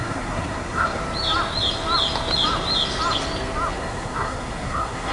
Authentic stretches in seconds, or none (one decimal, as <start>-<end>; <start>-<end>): 1.0-3.7

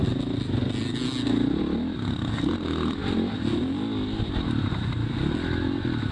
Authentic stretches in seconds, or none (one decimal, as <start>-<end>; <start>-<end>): 0.0-6.1

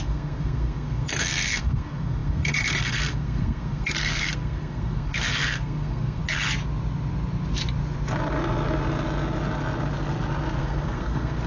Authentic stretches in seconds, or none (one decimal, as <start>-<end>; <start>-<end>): 6.2-10.6

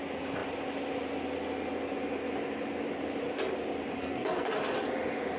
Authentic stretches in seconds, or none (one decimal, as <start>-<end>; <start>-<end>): 0.0-4.0; 4.5-5.4

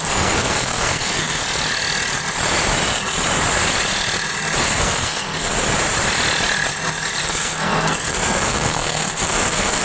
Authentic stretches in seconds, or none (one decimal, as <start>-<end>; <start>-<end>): 1.4-4.6; 5.5-7.2